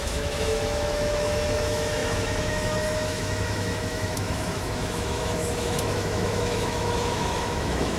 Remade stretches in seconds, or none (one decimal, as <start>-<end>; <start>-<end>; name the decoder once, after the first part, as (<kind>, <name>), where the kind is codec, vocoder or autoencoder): 0.0-8.0 (autoencoder, DAC-VAE)